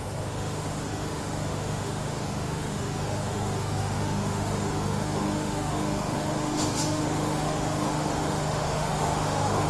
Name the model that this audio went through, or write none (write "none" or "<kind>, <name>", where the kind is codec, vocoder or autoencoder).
autoencoder, DAC-VAE